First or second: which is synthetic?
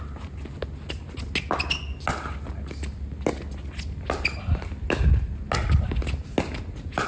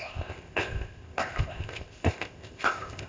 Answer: second